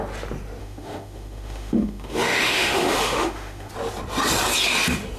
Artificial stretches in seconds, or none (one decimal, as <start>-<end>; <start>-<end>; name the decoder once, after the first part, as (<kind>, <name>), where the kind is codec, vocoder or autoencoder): 0.6-3.7 (autoencoder, DAC-VAE)